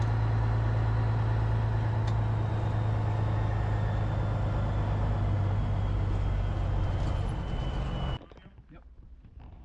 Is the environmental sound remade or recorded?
recorded